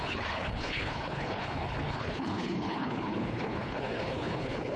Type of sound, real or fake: fake